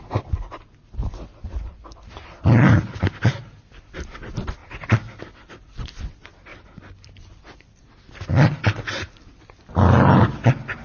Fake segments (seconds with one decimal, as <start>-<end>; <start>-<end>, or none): 1.0-2.1; 6.5-8.5